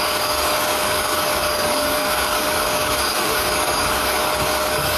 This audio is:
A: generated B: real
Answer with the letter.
A